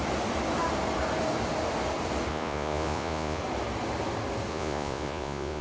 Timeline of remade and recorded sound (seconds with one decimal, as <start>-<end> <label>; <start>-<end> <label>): 0.0-2.3 recorded; 2.3-3.4 remade; 3.4-4.5 recorded; 4.5-5.6 remade